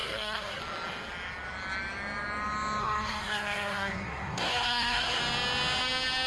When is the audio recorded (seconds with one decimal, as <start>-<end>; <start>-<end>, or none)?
0.6-2.8; 5.2-6.3

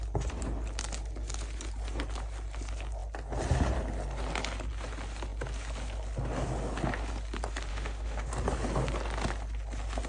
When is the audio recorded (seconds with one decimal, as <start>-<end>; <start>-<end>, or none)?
0.0-7.7; 8.3-10.1